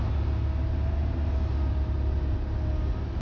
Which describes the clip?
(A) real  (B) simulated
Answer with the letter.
A